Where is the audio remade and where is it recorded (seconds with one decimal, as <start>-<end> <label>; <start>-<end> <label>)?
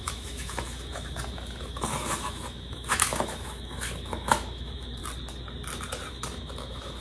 0.0-5.0 remade; 5.0-6.1 recorded; 6.1-7.0 remade